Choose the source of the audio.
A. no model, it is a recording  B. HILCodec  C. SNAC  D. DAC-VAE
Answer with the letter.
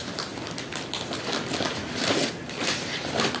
A